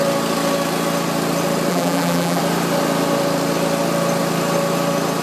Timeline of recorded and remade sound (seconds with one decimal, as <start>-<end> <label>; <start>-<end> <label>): 0.0-1.7 recorded; 1.7-2.4 remade; 2.4-5.2 recorded